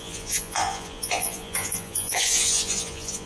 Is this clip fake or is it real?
fake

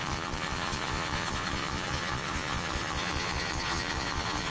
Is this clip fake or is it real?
fake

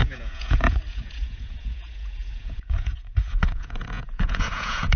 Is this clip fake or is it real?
fake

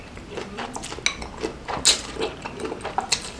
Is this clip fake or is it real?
real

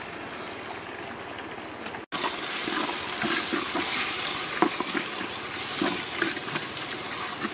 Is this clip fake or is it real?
real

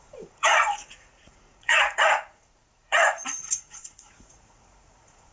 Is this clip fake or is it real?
fake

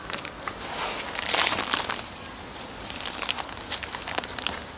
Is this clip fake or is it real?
real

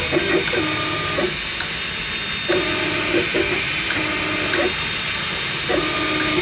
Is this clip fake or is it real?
real